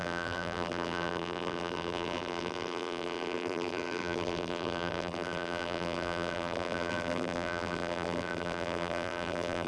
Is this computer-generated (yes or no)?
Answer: yes